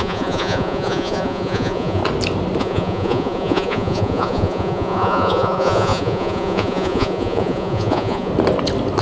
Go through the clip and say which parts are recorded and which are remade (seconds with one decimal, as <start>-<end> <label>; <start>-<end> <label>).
0.0-2.0 remade; 2.0-2.6 recorded; 2.6-8.3 remade; 8.3-9.0 recorded